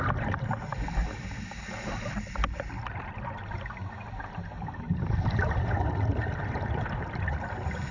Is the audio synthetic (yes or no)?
no